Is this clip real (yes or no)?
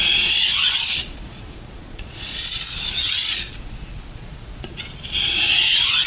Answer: no